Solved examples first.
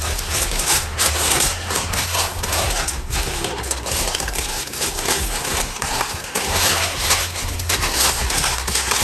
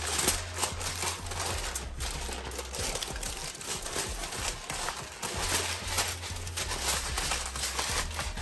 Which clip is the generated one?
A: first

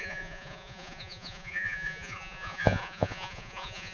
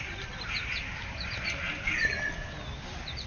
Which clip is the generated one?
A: first